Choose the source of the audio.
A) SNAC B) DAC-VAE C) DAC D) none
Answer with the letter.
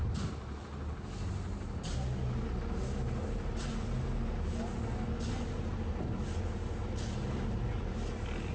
D